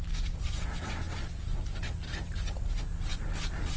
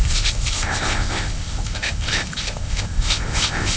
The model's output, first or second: second